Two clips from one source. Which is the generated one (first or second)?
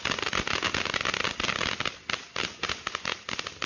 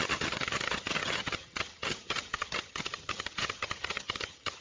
second